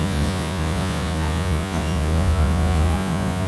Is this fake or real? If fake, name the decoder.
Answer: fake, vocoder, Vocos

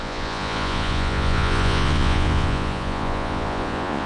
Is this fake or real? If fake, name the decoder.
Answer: fake, vocoder, Vocos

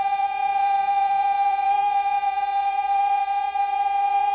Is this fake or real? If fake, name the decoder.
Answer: fake, vocoder, Vocos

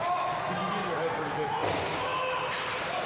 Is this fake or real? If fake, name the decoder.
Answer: real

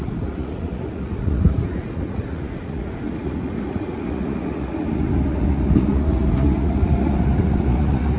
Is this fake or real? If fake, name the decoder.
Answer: fake, vocoder, Vocos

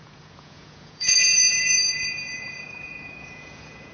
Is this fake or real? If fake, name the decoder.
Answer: fake, vocoder, Vocos